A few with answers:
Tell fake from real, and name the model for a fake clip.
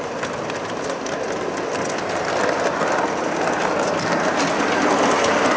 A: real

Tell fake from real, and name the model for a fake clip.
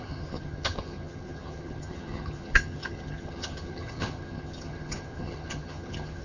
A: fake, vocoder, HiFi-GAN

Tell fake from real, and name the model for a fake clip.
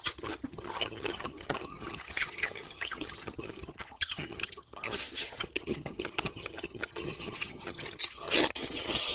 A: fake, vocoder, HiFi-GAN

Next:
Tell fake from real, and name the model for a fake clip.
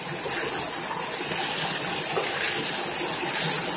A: real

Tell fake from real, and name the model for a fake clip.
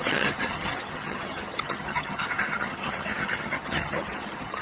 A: fake, vocoder, HiFi-GAN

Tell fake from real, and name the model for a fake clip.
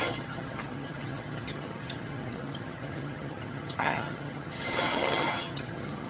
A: fake, vocoder, HiFi-GAN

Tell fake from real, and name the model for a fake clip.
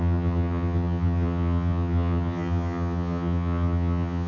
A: fake, vocoder, HiFi-GAN